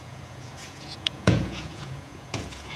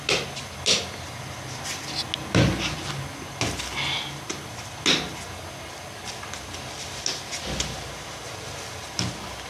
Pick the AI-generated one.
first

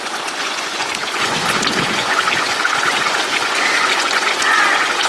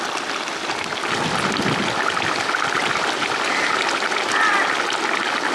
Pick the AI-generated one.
first